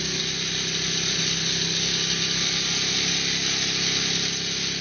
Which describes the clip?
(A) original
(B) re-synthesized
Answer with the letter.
A